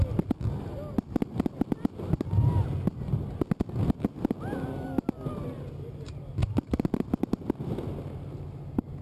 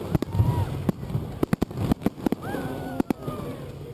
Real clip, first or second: first